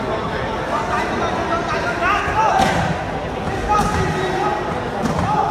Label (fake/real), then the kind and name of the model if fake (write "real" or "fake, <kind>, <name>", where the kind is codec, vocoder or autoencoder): real